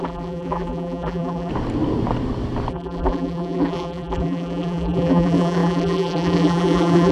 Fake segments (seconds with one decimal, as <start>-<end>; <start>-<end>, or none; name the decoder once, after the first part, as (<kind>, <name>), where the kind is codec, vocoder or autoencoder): 0.0-1.5 (vocoder, BigVGAN v2); 2.7-7.1